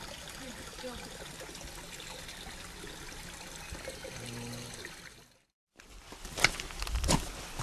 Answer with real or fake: real